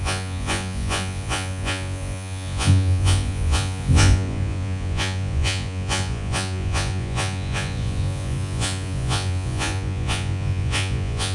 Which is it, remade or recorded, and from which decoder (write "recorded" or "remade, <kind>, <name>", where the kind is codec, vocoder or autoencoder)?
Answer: remade, vocoder, Vocos